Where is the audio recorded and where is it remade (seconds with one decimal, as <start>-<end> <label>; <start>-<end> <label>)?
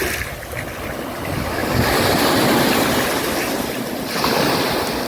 0.0-5.1 recorded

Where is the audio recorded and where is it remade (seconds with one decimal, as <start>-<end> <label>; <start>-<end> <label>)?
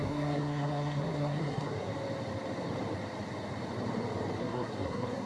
0.0-1.9 remade; 1.9-4.4 recorded; 4.4-5.3 remade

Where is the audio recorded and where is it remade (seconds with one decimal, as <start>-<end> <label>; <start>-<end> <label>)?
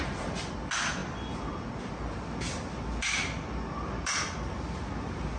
0.0-5.4 recorded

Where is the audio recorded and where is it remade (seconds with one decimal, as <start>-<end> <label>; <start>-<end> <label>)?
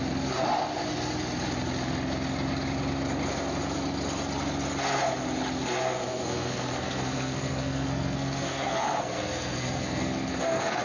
0.0-6.1 recorded; 6.1-10.8 remade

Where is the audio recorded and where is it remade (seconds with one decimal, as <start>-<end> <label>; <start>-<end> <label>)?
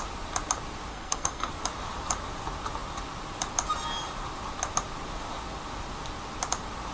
0.0-0.9 recorded; 0.9-1.5 remade; 1.5-6.9 recorded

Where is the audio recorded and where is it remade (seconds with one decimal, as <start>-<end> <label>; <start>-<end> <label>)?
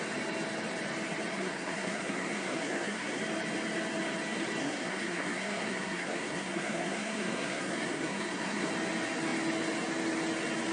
0.0-1.3 recorded; 1.3-3.2 remade; 3.2-4.6 recorded; 4.6-8.7 remade; 8.7-10.7 recorded